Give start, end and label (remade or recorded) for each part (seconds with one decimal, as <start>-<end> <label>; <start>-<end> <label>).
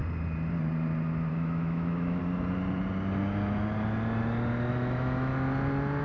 0.0-1.3 recorded; 1.3-2.2 remade; 2.2-4.7 recorded; 4.7-5.3 remade; 5.3-6.0 recorded